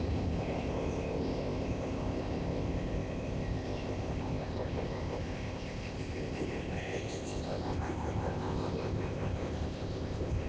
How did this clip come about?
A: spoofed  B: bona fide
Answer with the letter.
A